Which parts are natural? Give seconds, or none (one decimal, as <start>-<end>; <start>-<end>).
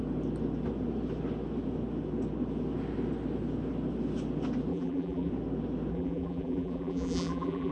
0.0-4.7; 5.3-5.9